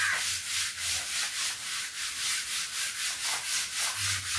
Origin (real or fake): real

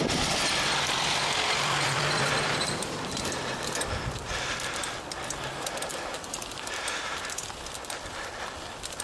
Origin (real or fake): fake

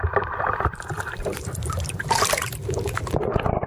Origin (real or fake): fake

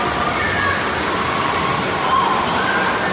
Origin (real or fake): real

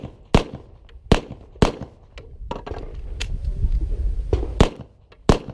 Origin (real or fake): real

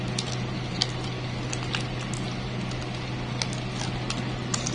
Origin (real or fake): real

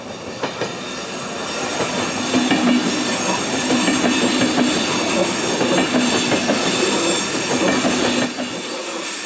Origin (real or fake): real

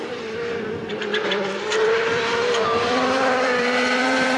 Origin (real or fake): fake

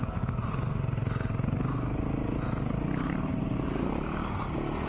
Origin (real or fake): real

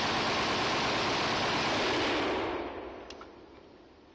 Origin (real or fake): real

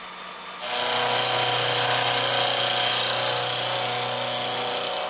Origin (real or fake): real